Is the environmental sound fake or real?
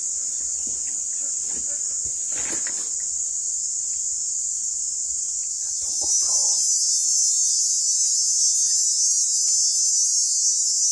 real